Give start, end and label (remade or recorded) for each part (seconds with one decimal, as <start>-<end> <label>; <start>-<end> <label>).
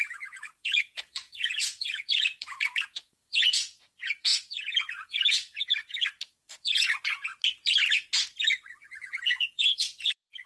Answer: 0.0-7.3 remade; 7.3-8.6 recorded; 8.6-10.5 remade